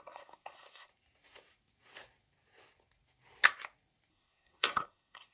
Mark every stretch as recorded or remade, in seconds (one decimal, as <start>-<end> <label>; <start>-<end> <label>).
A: 0.0-0.9 remade; 0.9-4.1 recorded; 4.1-5.3 remade